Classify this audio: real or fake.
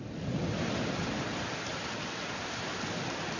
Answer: real